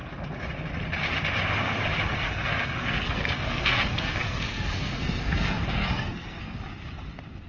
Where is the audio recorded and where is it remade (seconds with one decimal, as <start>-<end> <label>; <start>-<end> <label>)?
0.0-2.1 recorded; 2.1-6.6 remade; 6.6-7.5 recorded